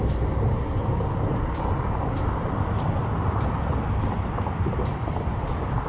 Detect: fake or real fake